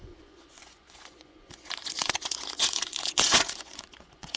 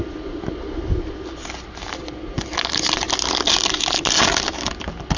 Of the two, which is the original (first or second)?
second